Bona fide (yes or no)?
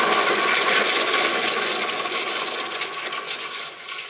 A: no